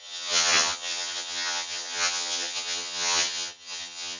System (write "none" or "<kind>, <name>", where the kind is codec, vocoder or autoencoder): vocoder, HiFi-GAN